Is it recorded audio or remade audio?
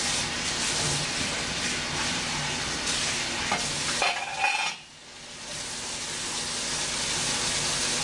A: recorded